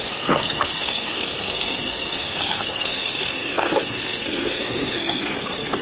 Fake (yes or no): yes